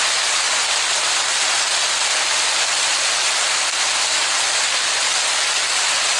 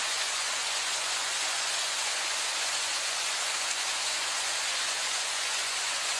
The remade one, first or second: second